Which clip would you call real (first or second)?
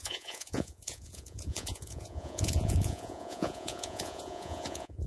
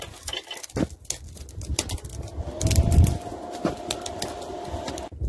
second